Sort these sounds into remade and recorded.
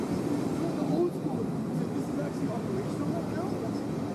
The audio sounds recorded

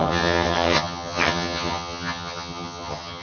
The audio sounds remade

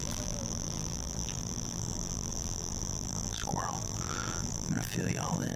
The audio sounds remade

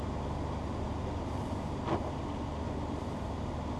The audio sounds recorded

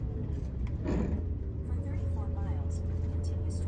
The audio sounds recorded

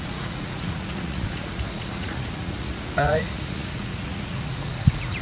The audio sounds remade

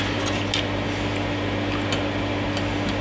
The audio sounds recorded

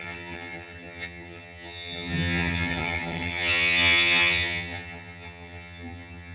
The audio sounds remade